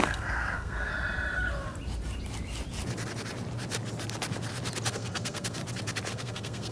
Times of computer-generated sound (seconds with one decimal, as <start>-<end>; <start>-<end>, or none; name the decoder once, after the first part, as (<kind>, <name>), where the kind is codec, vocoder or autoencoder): 0.0-0.9 (codec, SNAC); 4.9-5.6; 6.1-6.7